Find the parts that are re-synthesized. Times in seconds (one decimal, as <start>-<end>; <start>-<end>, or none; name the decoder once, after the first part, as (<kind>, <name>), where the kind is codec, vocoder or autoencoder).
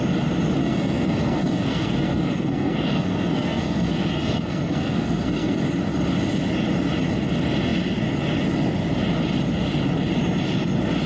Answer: 0.6-5.6 (codec, SNAC)